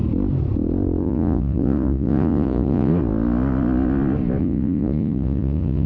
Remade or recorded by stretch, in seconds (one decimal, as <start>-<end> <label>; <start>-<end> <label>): 0.0-1.0 recorded; 1.0-2.9 remade; 2.9-4.4 recorded; 4.4-5.9 remade